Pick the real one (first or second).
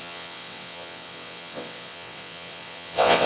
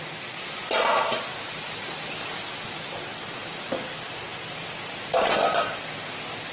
second